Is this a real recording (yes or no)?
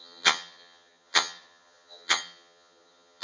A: no